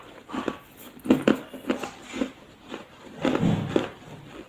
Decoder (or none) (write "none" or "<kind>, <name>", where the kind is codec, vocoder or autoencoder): none